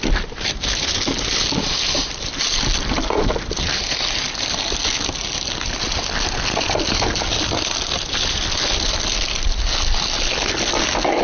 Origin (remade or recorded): recorded